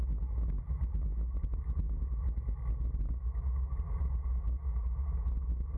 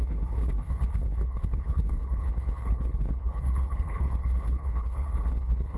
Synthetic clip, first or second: second